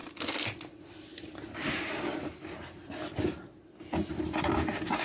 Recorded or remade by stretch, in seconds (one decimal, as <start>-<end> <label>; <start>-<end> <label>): 0.0-5.0 recorded